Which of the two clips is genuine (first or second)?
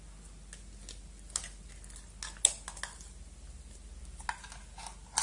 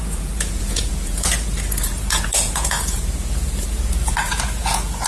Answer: first